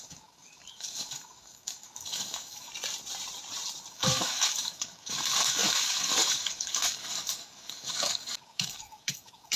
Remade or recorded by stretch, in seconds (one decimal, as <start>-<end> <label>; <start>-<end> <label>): 0.0-2.7 remade; 2.7-3.9 recorded; 3.9-9.6 remade